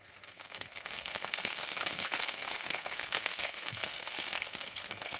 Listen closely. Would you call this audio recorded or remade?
remade